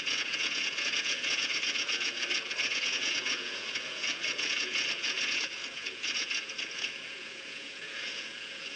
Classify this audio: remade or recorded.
remade